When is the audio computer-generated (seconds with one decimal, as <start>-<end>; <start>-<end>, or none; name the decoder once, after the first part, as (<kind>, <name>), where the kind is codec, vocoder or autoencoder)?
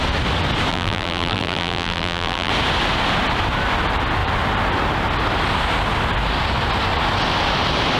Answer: 0.7-2.5 (vocoder, BigVGAN v2)